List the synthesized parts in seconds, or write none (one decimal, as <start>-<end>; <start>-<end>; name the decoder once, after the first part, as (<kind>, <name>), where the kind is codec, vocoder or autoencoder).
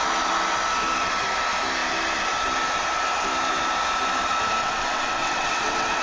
4.6-6.0 (vocoder, WaveNeXt)